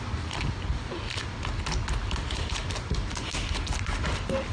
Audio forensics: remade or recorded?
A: recorded